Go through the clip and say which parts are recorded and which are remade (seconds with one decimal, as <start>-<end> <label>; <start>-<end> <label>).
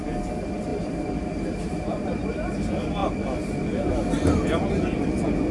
0.0-0.7 recorded; 0.7-2.6 remade; 2.6-5.5 recorded